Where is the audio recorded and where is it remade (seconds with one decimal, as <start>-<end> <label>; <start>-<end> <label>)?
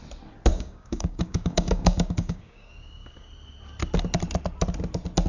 0.0-0.5 recorded; 0.5-3.3 remade; 3.3-5.3 recorded